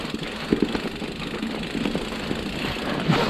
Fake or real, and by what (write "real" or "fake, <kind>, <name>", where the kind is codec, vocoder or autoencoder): real